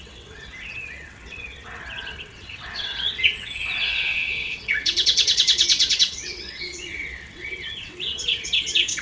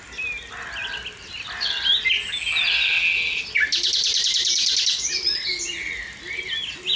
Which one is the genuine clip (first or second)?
second